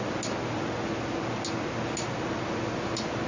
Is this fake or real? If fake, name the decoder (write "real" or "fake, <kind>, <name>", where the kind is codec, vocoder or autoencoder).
real